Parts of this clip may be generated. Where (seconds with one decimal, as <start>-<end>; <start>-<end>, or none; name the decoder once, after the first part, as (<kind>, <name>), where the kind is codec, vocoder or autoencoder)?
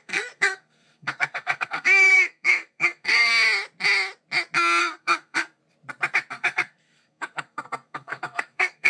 0.0-3.3 (codec, SNAC); 4.8-5.6; 6.3-8.9